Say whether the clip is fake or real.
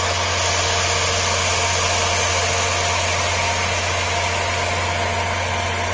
real